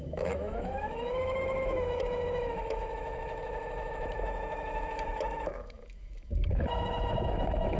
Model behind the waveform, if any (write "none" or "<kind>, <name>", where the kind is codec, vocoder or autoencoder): autoencoder, DAC-VAE